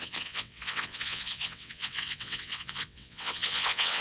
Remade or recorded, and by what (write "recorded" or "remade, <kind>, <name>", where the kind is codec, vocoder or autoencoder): remade, vocoder, WaveNeXt